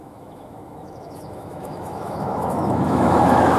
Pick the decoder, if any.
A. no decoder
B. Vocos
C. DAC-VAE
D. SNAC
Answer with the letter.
C